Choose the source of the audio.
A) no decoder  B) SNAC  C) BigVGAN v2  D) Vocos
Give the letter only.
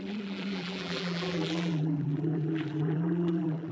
C